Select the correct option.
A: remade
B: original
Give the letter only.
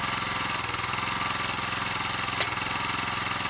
B